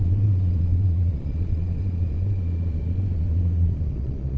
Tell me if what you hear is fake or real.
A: fake